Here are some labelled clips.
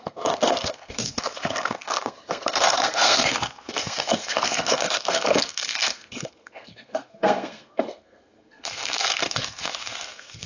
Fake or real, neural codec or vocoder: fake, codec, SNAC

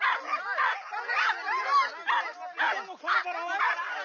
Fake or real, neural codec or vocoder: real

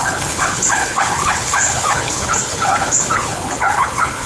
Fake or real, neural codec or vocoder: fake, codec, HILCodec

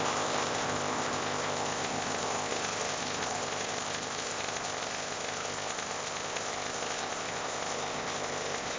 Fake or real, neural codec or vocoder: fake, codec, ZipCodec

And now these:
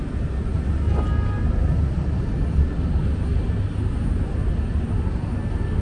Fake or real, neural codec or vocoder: real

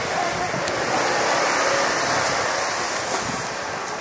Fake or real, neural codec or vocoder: fake, vocoder, BigVGAN v2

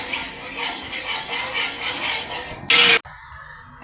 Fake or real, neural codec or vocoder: real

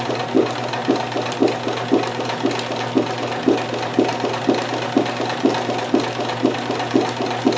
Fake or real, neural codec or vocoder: real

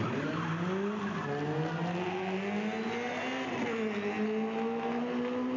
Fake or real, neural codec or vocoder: real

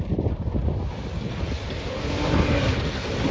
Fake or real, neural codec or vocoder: real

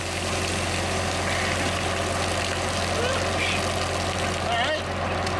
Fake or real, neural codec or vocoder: real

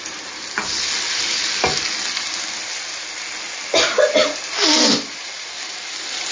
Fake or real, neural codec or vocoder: real